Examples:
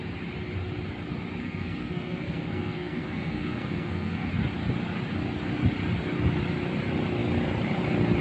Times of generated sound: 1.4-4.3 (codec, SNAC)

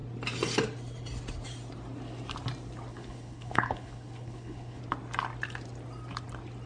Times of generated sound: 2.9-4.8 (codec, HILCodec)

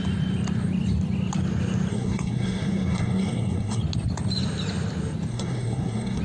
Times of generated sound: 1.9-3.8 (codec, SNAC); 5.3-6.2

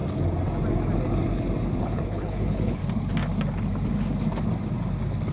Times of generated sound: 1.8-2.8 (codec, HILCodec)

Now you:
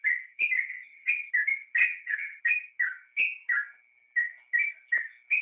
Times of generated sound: 0.7-1.3 (vocoder, HiFi-GAN); 1.8-2.4